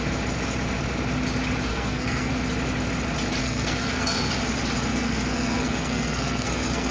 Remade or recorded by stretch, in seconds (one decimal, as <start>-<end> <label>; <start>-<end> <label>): 0.0-1.7 recorded; 1.7-2.3 remade; 2.3-3.4 recorded; 3.4-4.2 remade; 4.2-4.9 recorded; 4.9-6.9 remade